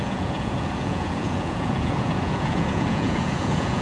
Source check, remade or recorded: remade